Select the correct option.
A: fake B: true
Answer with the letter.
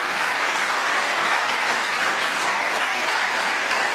A